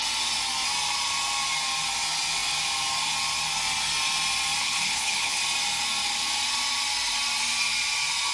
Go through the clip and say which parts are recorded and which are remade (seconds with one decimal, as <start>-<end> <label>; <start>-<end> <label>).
0.0-4.6 recorded; 4.6-5.4 remade; 5.4-8.3 recorded